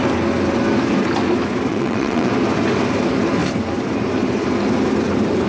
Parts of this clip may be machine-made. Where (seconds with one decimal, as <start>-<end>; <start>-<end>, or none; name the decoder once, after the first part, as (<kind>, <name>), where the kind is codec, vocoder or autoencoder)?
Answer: 1.7-2.3 (vocoder, WaveNeXt)